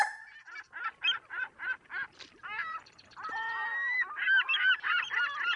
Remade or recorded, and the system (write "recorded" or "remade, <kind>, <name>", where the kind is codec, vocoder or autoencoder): remade, vocoder, BigVGAN v2